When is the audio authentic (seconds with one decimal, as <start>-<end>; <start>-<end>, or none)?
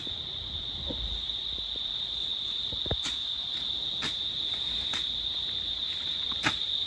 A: 0.0-6.9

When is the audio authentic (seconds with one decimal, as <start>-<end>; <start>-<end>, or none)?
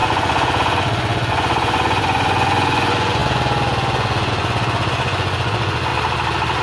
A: 5.9-6.6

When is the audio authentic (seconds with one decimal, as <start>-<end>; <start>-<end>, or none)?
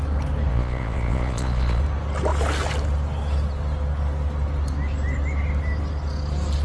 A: 0.0-0.5; 1.8-6.6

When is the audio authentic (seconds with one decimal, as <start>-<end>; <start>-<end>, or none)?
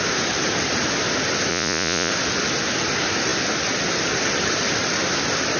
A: 0.0-1.5; 2.1-5.6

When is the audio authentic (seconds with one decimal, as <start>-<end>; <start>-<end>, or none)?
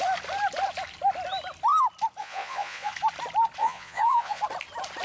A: 0.0-2.2; 2.9-3.6; 4.4-5.0